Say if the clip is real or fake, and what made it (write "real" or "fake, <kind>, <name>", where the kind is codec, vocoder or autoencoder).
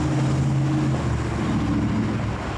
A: real